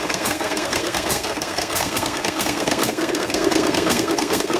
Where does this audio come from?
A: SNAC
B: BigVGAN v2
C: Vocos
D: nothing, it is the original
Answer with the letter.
A